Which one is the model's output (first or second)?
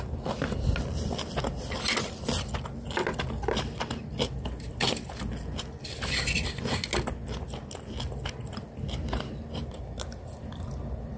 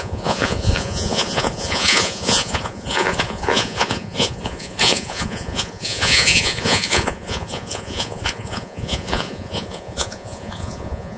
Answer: second